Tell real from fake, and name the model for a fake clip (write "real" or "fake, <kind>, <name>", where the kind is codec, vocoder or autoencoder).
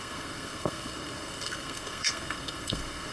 fake, codec, SNAC